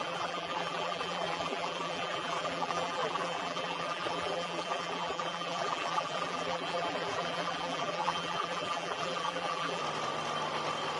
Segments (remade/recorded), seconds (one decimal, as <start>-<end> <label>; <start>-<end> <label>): 0.0-9.8 remade; 9.8-11.0 recorded